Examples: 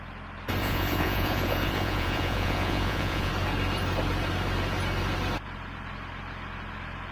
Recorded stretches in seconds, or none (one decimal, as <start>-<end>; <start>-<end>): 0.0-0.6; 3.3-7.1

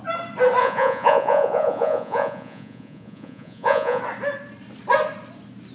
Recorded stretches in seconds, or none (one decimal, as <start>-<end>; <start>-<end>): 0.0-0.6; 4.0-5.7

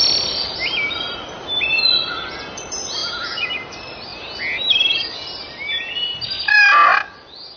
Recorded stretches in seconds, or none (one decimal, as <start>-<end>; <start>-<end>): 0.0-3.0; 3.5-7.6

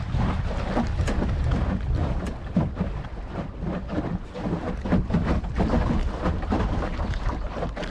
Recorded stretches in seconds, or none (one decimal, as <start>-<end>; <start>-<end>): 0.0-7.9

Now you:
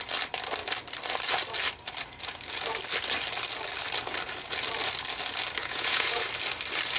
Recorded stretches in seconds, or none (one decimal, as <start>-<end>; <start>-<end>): 0.0-5.6; 6.2-7.0